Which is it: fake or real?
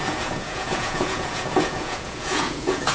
fake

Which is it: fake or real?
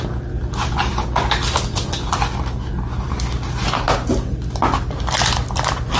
real